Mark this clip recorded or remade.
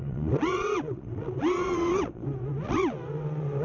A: remade